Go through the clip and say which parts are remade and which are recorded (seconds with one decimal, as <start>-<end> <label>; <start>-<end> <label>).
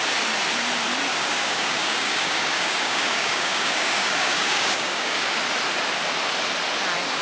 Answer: 0.0-1.1 recorded; 1.1-5.4 remade; 5.4-7.2 recorded